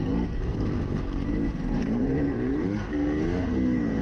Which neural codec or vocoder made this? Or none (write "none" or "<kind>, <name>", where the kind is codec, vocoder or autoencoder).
codec, SNAC